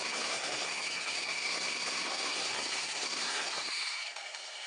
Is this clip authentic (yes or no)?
no